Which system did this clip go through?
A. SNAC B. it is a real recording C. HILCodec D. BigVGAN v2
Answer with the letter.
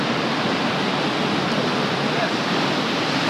B